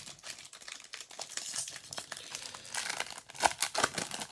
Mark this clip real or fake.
real